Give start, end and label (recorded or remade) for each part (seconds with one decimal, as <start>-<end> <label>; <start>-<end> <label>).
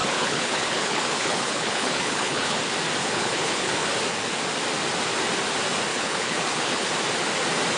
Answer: 0.0-2.6 remade; 2.6-3.0 recorded; 3.0-3.9 remade; 3.9-5.9 recorded; 5.9-6.9 remade; 6.9-7.8 recorded